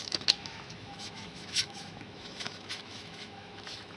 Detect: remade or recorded remade